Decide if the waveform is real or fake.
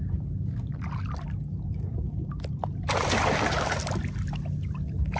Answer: real